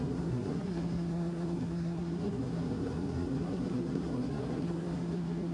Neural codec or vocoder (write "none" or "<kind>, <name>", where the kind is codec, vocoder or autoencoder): codec, SNAC